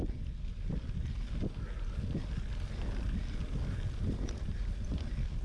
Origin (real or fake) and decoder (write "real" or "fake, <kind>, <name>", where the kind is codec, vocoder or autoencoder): real